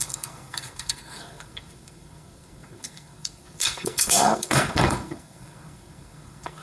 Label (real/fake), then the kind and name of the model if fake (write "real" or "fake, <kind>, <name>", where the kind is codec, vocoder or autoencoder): fake, codec, SNAC